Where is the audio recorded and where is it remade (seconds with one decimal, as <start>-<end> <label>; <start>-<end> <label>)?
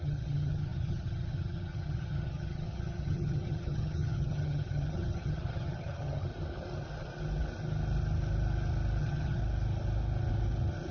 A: 0.0-6.3 remade; 6.3-9.0 recorded; 9.0-9.4 remade; 9.4-10.9 recorded